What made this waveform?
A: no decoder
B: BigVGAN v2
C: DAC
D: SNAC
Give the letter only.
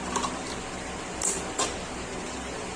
A